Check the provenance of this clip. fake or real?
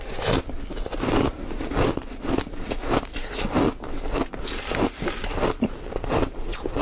real